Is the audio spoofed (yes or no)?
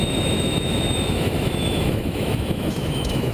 yes